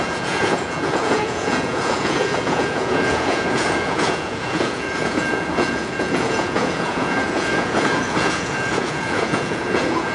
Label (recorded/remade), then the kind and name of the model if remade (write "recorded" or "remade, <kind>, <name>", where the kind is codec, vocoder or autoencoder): remade, vocoder, Vocos